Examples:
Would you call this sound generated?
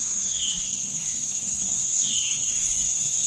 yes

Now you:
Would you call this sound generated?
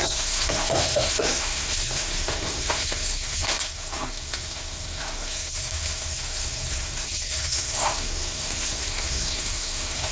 yes